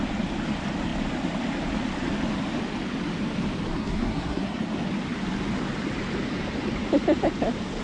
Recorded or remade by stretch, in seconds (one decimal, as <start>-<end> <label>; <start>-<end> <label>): 0.0-3.7 recorded; 3.7-4.6 remade; 4.6-7.8 recorded